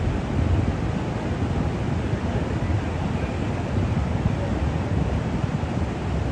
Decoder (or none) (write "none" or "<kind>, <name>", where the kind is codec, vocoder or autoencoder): none